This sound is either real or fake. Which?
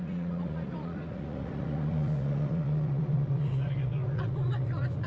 fake